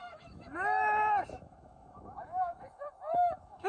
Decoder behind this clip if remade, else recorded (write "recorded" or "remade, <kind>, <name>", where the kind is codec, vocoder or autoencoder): remade, autoencoder, DAC-VAE